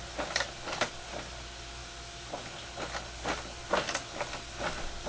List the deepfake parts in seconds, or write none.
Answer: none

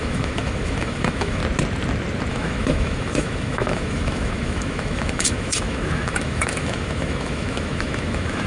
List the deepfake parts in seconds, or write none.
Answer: 0.0-1.4; 2.3-8.5